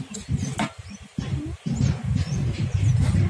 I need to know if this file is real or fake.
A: real